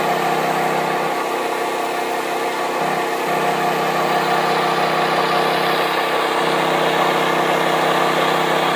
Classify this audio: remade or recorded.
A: recorded